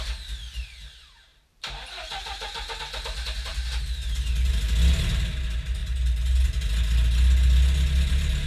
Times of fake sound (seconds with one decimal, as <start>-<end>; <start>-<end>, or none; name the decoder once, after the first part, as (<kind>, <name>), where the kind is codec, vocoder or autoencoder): 1.3-2.8 (vocoder, BigVGAN v2); 3.5-4.3